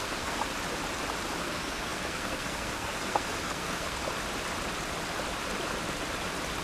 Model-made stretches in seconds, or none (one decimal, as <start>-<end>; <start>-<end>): 0.0-0.5; 1.4-4.0